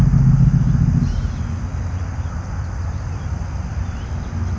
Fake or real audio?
real